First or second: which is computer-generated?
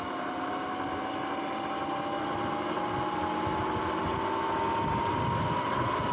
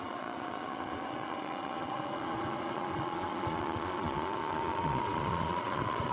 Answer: second